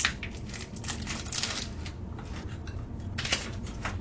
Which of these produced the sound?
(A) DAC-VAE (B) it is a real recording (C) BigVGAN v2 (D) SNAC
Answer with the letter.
C